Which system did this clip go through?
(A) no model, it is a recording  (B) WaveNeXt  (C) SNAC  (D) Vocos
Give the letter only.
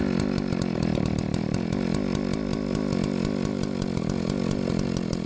A